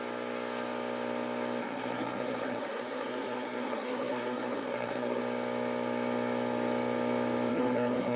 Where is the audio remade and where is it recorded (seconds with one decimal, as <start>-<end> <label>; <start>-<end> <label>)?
0.0-1.6 recorded; 1.6-5.2 remade; 5.2-7.5 recorded; 7.5-8.2 remade